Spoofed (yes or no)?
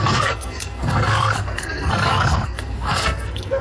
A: yes